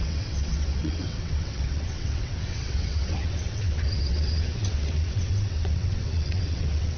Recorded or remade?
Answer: remade